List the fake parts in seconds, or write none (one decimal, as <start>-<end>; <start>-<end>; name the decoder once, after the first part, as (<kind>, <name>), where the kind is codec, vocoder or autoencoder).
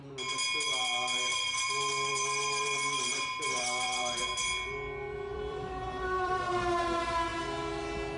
1.3-4.2 (vocoder, BigVGAN v2); 5.3-6.5